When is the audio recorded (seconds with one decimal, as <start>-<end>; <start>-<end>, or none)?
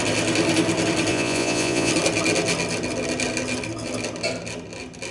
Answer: 0.0-1.1; 1.9-5.1